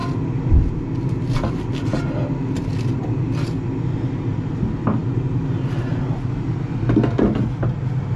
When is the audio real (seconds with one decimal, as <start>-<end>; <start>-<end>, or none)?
0.0-8.2